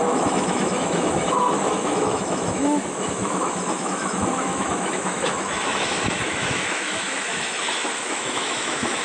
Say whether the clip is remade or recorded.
remade